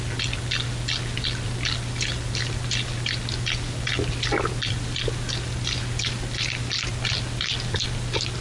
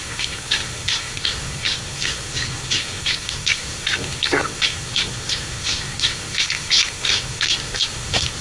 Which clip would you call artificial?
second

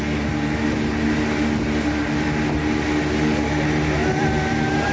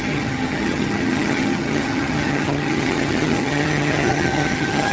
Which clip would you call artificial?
second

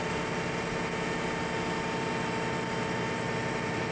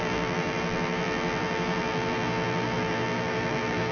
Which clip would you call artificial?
second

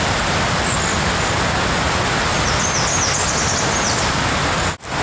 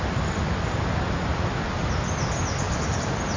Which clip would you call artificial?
second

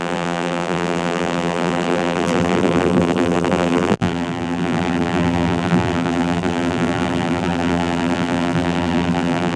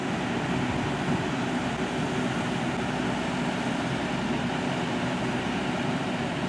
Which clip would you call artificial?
first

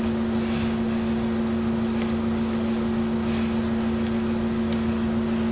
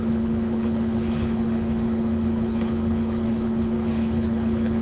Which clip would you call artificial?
second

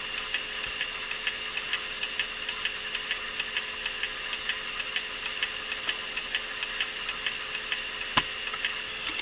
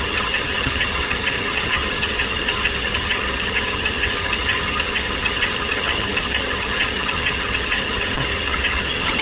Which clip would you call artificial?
second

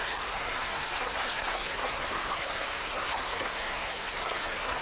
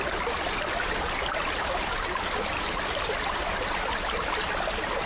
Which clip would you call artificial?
first